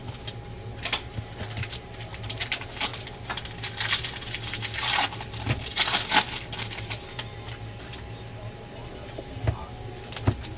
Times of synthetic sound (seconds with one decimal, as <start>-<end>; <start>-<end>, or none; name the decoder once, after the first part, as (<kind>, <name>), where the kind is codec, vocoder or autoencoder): none